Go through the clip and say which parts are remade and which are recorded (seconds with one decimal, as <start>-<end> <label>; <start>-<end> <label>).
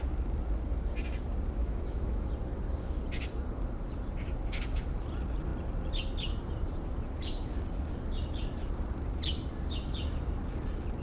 0.0-1.6 recorded; 1.6-2.3 remade; 2.3-11.0 recorded